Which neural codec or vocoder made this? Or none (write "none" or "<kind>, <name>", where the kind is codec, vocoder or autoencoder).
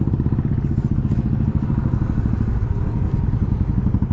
none